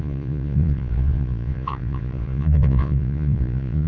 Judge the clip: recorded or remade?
remade